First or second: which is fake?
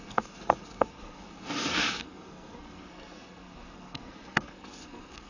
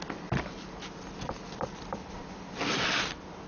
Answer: first